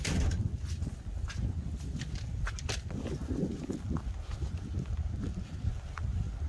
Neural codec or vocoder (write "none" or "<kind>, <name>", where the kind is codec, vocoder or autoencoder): none